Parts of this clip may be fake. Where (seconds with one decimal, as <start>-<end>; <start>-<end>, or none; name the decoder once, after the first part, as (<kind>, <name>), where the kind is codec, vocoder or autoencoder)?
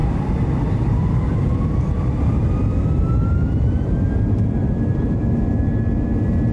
none